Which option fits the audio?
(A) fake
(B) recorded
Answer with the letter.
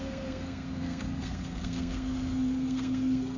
A